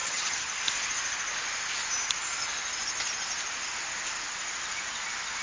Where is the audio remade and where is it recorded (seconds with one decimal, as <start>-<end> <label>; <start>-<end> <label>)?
0.0-0.6 remade; 0.6-5.4 recorded